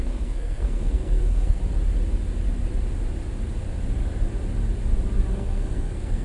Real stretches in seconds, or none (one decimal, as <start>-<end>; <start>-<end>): 1.6-5.3